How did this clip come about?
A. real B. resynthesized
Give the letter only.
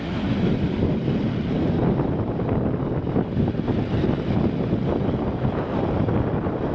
A